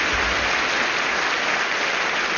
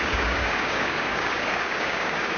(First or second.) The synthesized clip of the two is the second